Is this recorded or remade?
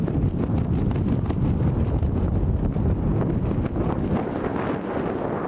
recorded